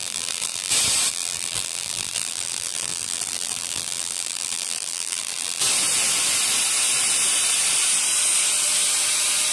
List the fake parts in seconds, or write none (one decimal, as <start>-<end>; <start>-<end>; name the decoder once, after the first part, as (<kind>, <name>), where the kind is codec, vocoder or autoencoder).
0.0-0.7 (vocoder, BigVGAN v2); 1.1-5.6